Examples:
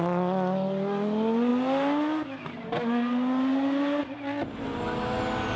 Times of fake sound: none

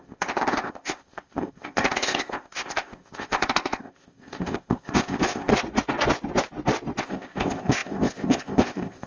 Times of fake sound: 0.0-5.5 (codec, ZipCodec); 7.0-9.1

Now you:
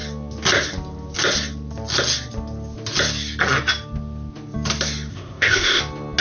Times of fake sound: 5.1-5.8 (codec, ZipCodec)

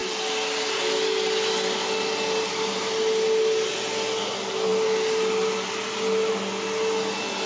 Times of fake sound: none